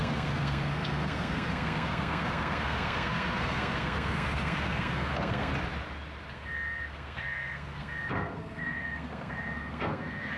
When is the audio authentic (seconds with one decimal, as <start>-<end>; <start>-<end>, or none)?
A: 5.5-6.3